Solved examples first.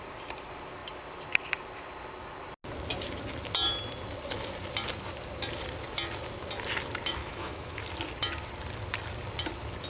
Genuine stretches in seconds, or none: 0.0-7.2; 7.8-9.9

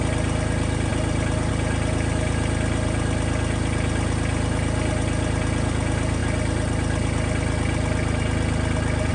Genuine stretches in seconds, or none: 0.0-9.1

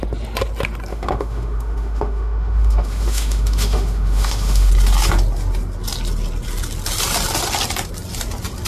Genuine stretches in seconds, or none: 0.0-0.9; 4.7-8.7

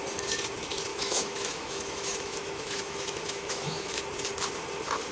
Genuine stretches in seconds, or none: 0.0-0.9; 4.0-5.1

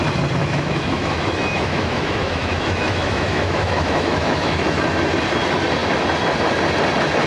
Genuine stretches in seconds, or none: 0.0-0.4; 4.8-7.3